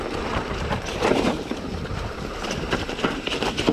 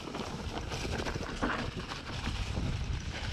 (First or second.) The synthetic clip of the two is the first